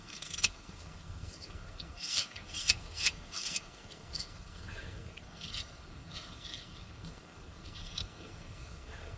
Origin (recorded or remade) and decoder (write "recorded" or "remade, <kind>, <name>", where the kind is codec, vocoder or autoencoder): remade, codec, SNAC